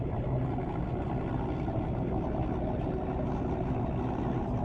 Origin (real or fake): real